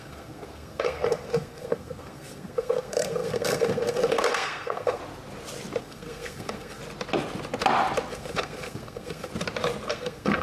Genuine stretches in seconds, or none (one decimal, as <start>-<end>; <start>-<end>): 5.0-5.8; 6.8-8.1; 9.3-9.9

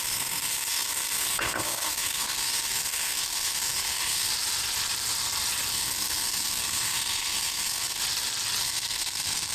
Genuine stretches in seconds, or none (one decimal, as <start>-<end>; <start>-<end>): 4.3-5.7; 8.0-8.6

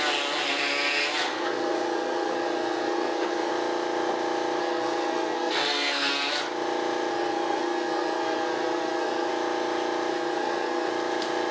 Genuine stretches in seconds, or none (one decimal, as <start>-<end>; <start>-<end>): 0.0-1.3; 3.5-4.6; 6.1-7.1; 9.3-10.1; 10.9-11.5

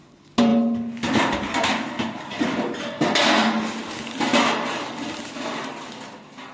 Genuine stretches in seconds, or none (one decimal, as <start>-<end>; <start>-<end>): 0.0-6.5

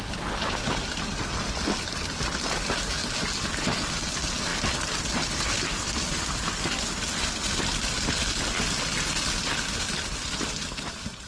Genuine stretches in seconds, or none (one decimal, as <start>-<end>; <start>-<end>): 0.0-11.3

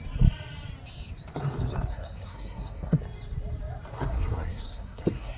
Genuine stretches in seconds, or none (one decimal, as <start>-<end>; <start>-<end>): 0.0-1.9; 3.0-3.9

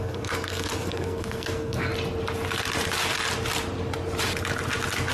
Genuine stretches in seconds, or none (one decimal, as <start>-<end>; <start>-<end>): 1.9-5.1